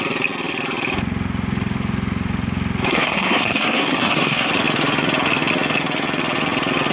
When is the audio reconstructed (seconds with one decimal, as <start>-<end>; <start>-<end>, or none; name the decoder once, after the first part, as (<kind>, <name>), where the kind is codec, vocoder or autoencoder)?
2.9-4.5 (codec, SNAC)